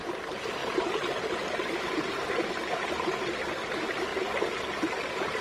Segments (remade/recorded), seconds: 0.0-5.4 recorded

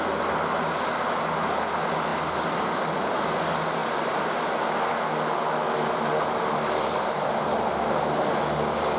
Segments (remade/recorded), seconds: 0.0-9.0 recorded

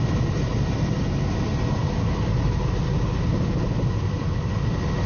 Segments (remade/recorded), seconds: 0.0-0.5 recorded; 0.5-1.4 remade; 1.4-5.1 recorded

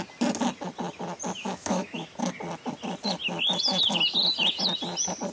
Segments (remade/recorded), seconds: 0.0-1.4 recorded; 1.4-2.1 remade; 2.1-5.3 recorded

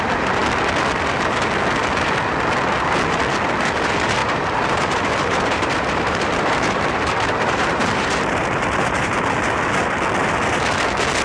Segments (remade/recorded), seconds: 0.0-4.2 recorded; 4.2-9.2 remade; 9.2-11.2 recorded

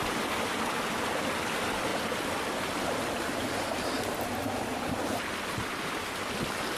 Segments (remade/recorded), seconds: 0.0-6.8 recorded